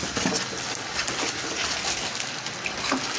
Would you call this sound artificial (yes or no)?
no